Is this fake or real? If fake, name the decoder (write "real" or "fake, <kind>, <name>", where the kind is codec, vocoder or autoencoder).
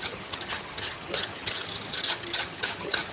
fake, vocoder, HiFi-GAN